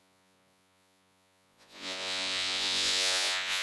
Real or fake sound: fake